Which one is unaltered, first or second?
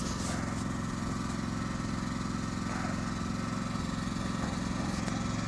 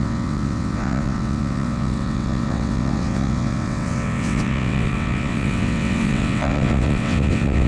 first